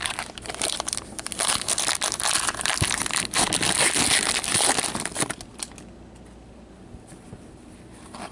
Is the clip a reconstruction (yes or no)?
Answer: no